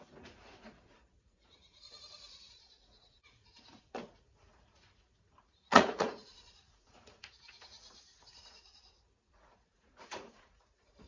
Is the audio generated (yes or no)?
yes